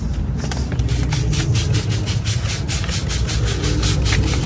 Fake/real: real